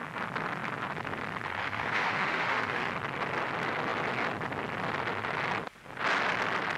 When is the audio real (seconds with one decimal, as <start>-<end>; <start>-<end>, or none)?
0.0-1.6; 2.9-6.8